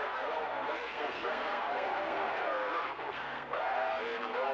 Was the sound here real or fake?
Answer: fake